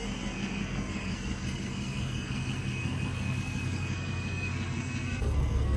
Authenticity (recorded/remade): remade